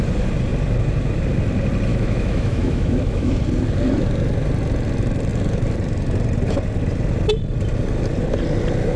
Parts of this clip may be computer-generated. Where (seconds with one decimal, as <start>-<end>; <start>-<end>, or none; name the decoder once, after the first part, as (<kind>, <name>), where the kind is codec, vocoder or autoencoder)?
1.9-3.4 (autoencoder, DAC-VAE)